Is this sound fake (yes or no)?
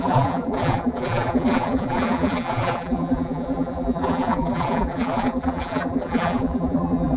yes